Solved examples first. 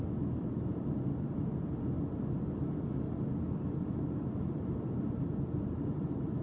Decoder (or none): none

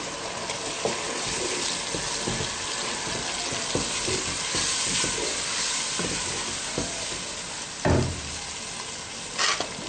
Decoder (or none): none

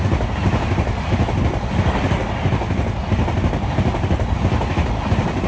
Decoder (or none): none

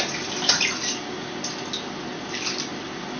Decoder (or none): none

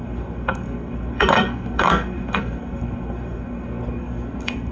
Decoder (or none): codec, SNAC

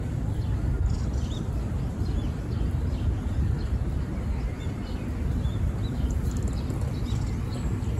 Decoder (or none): none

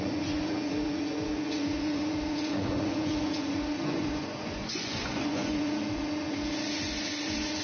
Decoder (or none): vocoder, Vocos